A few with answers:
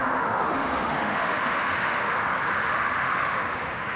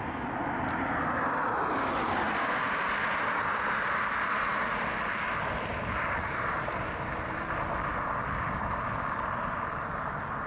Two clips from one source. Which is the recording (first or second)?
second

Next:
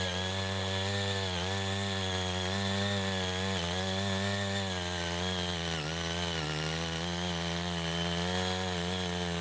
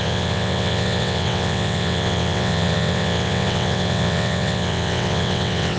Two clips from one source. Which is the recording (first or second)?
first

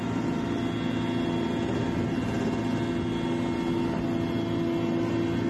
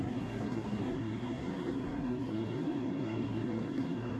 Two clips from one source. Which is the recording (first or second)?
first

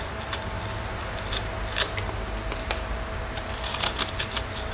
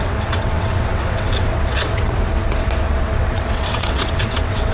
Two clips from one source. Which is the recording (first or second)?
first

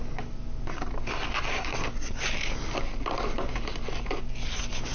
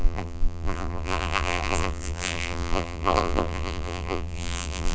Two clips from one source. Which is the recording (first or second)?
first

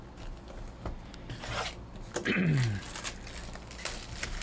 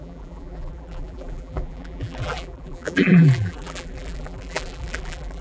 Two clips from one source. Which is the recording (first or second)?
first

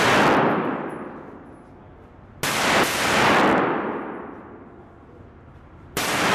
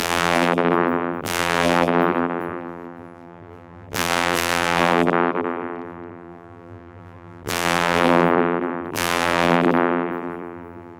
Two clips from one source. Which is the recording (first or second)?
first